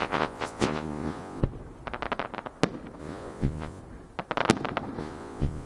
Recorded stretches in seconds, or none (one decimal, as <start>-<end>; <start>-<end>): 1.4-3.0; 3.8-5.0

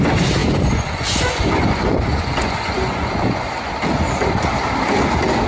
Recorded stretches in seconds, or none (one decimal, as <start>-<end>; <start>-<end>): 0.0-0.4; 3.7-5.5

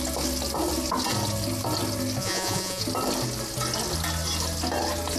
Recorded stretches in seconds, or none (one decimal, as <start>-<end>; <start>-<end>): 0.0-2.2; 2.8-5.2

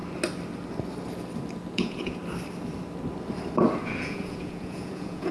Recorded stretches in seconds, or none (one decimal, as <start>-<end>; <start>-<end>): 0.0-1.7; 2.2-3.8

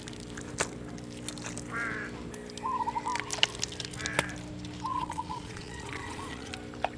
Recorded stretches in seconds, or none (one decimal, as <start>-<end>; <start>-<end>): 0.0-4.9; 6.5-7.0

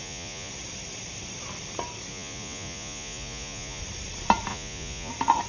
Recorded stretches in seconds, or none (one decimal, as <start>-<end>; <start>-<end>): 0.5-2.1; 3.8-4.5; 5.1-5.5

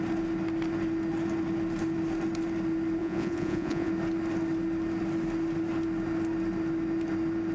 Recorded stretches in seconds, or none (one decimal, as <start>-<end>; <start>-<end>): 0.0-3.0; 3.9-7.5

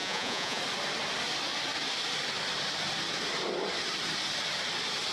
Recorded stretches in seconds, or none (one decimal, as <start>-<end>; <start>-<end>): 0.6-5.1